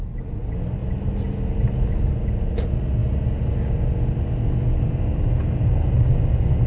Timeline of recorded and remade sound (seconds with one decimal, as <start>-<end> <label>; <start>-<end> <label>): 0.0-6.7 recorded